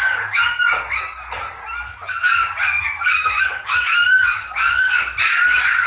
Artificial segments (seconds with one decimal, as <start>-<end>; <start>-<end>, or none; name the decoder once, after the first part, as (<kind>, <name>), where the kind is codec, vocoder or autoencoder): 0.0-1.6 (codec, DAC); 2.8-4.9